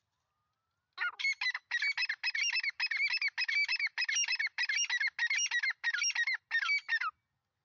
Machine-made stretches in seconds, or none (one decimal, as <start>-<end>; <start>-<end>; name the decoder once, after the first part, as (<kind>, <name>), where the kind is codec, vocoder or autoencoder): none